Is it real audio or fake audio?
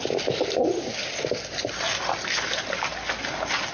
real